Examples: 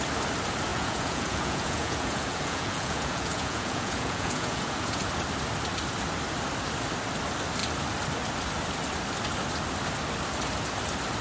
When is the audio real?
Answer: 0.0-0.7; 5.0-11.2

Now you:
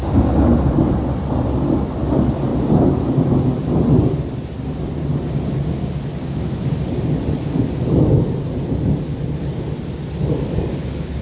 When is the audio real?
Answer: 0.0-11.2

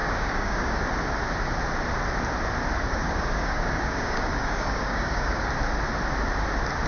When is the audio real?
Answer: 0.8-2.9; 5.5-6.9

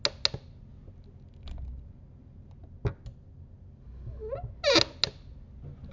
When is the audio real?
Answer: 0.0-5.9

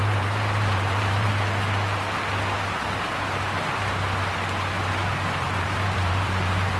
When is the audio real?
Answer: 1.3-5.0

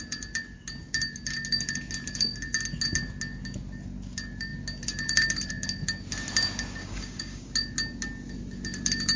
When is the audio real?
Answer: 0.0-6.8; 7.5-9.2

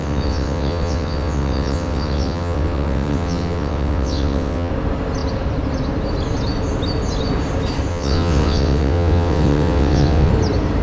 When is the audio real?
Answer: 4.7-7.9; 10.3-10.8

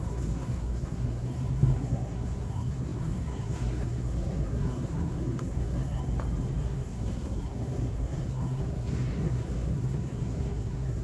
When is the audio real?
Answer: 6.0-6.6